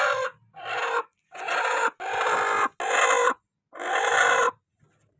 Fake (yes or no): no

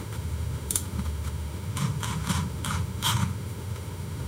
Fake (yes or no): yes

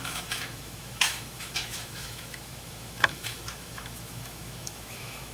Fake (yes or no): yes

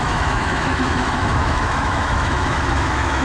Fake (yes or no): yes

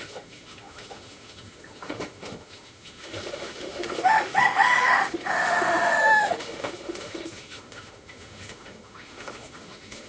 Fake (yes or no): yes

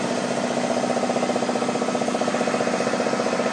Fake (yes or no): no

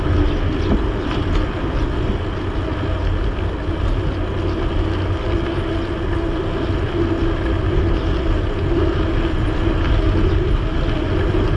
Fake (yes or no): no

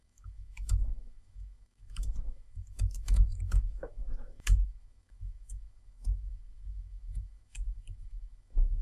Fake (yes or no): yes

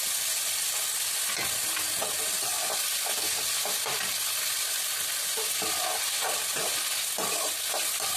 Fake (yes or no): no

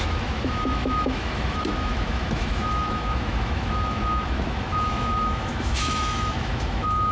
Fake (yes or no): yes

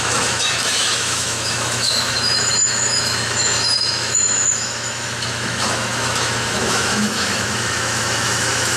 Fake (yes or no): yes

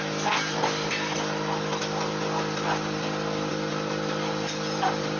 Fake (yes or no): no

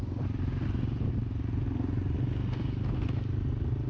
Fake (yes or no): no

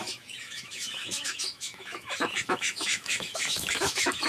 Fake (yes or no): yes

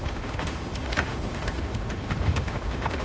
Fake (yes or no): yes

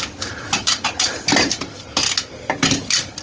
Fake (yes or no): no